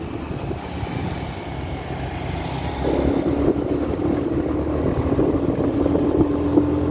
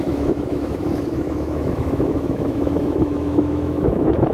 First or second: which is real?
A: first